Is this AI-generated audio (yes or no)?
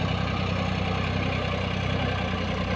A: no